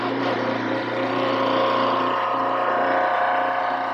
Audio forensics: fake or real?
fake